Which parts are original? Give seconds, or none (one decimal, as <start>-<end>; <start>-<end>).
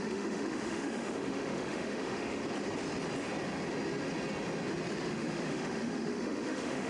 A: 2.4-5.1